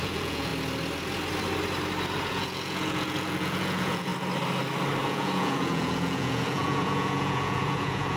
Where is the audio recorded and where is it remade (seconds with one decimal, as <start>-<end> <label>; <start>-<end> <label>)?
0.0-0.5 remade; 0.5-2.3 recorded; 2.3-4.1 remade; 4.1-5.0 recorded; 5.0-8.2 remade